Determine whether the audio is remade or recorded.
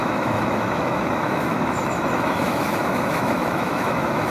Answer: remade